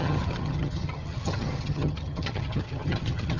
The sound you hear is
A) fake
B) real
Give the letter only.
A